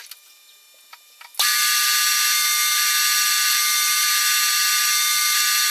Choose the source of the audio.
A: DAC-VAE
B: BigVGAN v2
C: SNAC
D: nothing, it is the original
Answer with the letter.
D